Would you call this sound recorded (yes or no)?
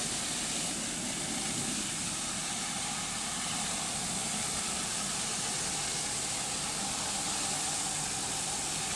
yes